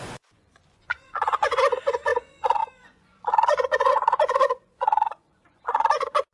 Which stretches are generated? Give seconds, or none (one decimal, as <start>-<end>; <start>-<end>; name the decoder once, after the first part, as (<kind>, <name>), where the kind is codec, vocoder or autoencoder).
0.0-6.3 (vocoder, Vocos)